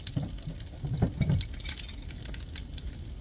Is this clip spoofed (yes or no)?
no